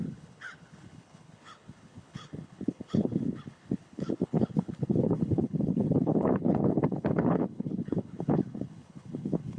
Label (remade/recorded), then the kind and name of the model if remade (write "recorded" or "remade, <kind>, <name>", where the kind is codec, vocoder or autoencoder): remade, codec, HILCodec